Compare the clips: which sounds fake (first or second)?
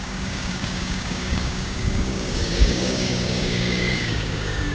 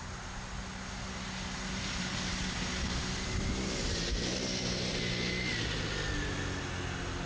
first